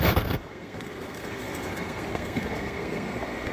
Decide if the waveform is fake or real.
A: fake